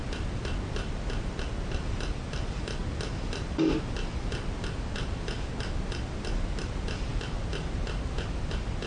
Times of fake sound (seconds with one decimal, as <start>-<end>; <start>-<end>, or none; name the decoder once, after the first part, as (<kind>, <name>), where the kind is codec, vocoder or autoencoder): none